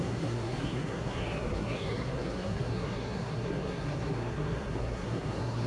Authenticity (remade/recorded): remade